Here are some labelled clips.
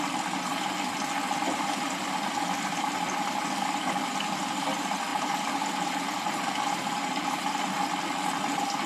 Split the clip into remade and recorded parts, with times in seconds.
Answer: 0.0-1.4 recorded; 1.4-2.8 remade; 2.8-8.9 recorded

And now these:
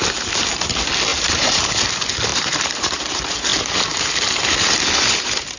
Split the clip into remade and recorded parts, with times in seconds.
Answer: 0.0-0.6 remade; 0.6-1.1 recorded; 1.1-1.7 remade; 1.7-2.3 recorded; 2.3-3.0 remade; 3.0-5.6 recorded

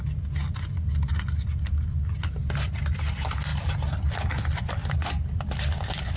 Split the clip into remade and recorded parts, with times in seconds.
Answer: 0.0-3.5 recorded; 3.5-5.1 remade; 5.1-6.2 recorded

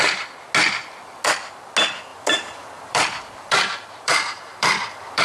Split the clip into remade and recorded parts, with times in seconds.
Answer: 0.0-2.1 recorded; 2.1-5.2 remade